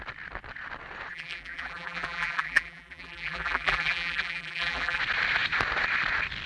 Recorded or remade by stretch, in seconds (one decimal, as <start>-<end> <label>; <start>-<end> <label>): 0.0-1.1 recorded; 1.1-5.0 remade; 5.0-6.5 recorded